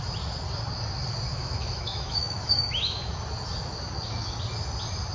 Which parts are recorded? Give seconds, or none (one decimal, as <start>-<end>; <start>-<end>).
0.0-1.3; 3.1-5.1